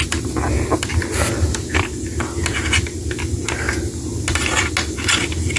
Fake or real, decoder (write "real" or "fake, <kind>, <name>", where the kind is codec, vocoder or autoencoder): real